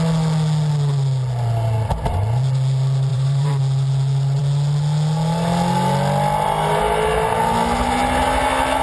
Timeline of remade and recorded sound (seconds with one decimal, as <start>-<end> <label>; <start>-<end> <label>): 0.0-3.1 recorded; 3.1-3.6 remade; 3.6-8.8 recorded